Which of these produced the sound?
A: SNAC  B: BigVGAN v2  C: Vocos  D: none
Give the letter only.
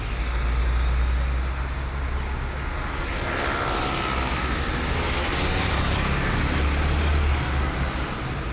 D